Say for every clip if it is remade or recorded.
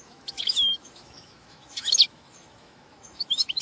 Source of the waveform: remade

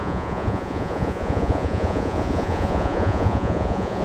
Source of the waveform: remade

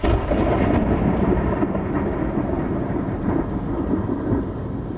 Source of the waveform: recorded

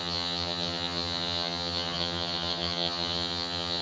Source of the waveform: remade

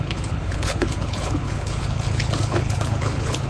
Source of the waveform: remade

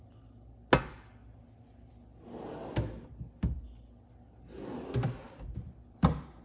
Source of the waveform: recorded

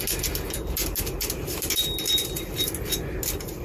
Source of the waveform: recorded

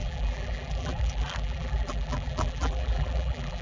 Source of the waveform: remade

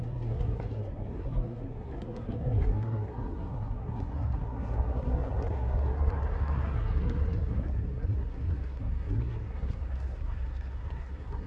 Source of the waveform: remade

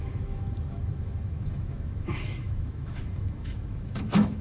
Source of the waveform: remade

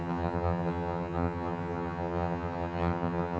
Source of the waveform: remade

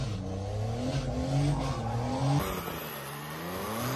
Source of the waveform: recorded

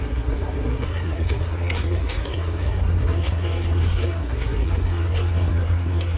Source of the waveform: remade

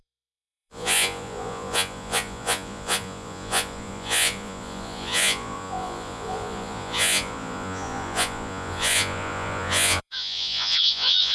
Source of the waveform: remade